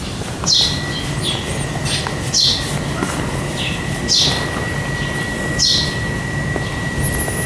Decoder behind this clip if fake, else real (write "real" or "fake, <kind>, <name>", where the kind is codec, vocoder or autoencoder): real